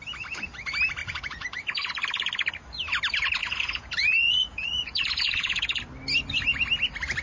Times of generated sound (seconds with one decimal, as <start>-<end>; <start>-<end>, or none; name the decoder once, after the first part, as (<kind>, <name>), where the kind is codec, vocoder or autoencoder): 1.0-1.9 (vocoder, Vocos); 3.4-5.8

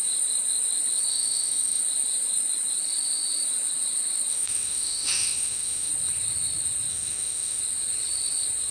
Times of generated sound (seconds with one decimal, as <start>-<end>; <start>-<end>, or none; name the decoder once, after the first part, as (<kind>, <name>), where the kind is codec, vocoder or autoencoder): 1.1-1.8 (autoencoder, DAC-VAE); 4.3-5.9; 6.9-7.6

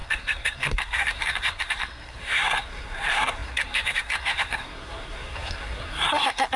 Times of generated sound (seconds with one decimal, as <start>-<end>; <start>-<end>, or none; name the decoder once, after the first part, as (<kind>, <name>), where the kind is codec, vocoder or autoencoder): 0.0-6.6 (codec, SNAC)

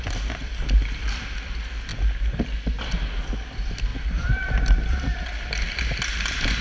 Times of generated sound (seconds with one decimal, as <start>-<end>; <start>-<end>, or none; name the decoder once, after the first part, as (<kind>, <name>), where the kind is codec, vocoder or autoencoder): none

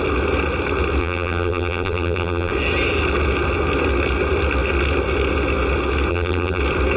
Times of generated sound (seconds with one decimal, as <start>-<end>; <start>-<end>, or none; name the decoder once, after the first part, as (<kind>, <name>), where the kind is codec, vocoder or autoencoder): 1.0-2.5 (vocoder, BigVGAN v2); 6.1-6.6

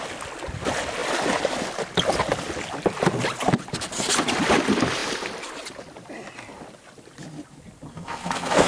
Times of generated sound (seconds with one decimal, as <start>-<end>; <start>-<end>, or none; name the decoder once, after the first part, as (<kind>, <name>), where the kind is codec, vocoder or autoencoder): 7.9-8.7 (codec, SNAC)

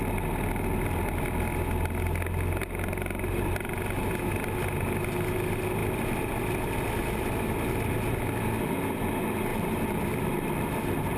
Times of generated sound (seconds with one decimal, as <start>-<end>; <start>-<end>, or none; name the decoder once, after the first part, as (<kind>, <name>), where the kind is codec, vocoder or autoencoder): 9.5-11.2 (vocoder, BigVGAN v2)

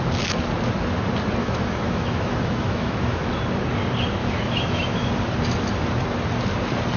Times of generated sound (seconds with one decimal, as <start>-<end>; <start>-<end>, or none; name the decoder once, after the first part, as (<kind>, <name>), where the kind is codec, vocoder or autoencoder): 1.4-3.3 (autoencoder, DAC-VAE); 4.2-5.1